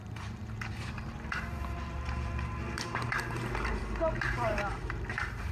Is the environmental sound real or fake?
fake